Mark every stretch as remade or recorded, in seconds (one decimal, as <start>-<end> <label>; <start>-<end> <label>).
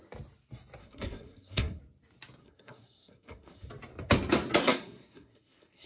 0.0-0.8 recorded; 0.8-1.8 remade; 1.8-2.4 recorded; 2.4-3.7 remade; 3.7-4.6 recorded; 4.6-5.9 remade